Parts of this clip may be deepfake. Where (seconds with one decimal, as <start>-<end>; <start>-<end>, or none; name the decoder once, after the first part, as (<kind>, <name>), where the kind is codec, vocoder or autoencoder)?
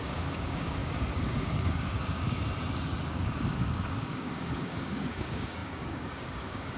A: 0.0-2.4 (codec, DAC); 3.1-6.8